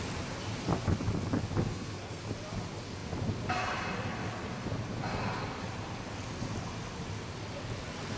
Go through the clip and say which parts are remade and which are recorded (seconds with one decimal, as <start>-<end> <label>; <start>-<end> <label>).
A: 0.0-1.6 recorded; 1.6-2.2 remade; 2.2-8.2 recorded